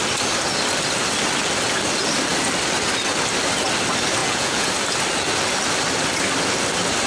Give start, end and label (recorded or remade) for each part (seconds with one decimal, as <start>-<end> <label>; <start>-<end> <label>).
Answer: 0.0-4.2 recorded; 4.2-4.7 remade; 4.7-7.1 recorded